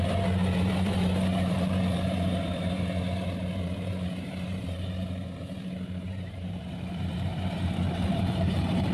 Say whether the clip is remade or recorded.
remade